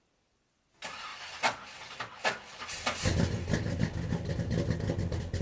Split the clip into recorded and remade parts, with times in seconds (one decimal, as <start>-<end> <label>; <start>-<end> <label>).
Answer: 0.0-5.4 recorded